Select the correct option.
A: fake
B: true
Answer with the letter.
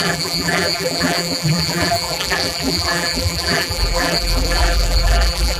A